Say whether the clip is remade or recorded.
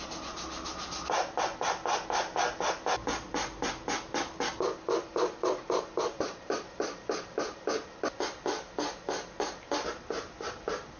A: recorded